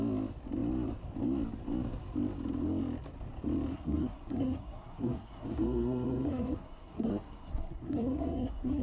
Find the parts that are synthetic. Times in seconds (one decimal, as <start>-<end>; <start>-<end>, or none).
3.7-8.8